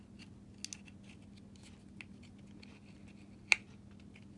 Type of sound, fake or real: real